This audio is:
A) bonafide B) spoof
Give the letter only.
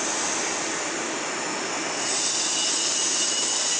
A